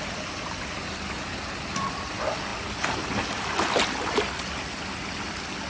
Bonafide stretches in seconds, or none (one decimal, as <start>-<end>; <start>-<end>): 0.0-5.7